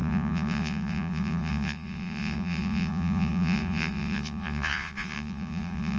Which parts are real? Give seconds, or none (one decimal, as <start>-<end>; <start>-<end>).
none